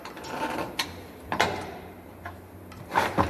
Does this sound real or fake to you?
fake